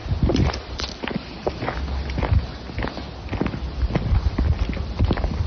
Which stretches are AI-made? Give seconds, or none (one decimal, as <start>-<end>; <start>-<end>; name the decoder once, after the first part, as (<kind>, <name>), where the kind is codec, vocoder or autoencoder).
none